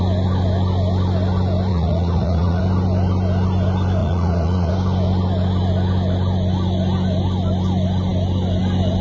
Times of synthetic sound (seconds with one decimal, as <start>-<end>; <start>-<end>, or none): 1.7-2.6; 4.0-4.7